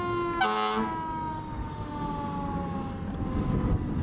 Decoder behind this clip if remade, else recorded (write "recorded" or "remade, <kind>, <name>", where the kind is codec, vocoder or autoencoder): recorded